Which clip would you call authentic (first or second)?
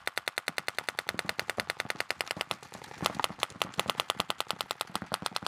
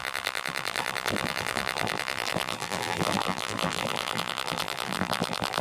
first